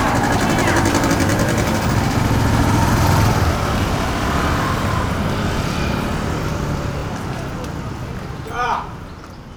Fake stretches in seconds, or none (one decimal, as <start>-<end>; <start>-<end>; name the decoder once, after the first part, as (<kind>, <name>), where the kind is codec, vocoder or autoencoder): 0.0-7.0 (vocoder, BigVGAN v2); 8.1-9.6